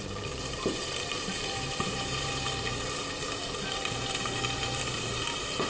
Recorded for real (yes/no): no